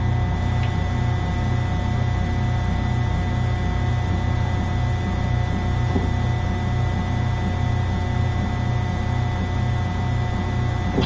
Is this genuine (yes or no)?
yes